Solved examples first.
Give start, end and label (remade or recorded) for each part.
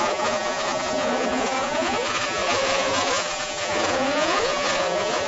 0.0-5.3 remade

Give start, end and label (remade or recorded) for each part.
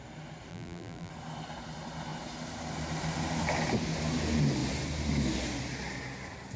0.0-0.5 recorded; 0.5-1.1 remade; 1.1-6.6 recorded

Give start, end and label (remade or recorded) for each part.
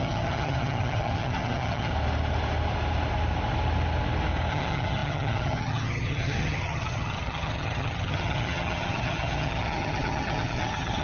0.0-1.9 remade; 1.9-4.5 recorded; 4.5-11.0 remade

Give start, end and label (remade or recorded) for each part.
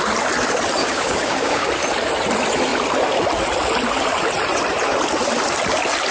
0.0-0.8 recorded; 0.8-1.7 remade; 1.7-6.1 recorded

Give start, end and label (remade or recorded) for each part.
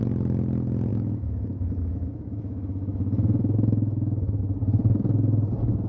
0.0-0.9 recorded; 0.9-4.4 remade; 4.4-5.9 recorded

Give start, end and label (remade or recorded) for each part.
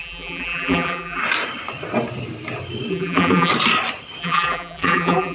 0.0-1.2 remade; 1.2-2.9 recorded; 2.9-3.5 remade; 3.5-4.2 recorded; 4.2-5.3 remade